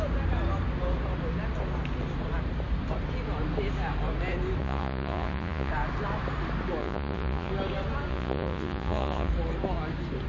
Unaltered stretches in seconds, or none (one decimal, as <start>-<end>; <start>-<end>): 0.0-4.6; 5.7-6.8; 7.5-8.1; 9.3-10.3